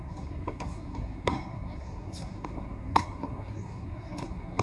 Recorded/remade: remade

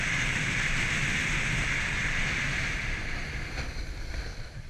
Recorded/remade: recorded